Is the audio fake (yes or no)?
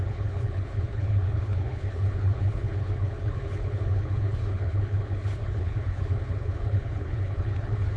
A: yes